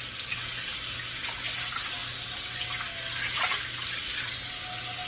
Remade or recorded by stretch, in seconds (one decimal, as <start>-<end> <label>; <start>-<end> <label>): 0.0-5.1 recorded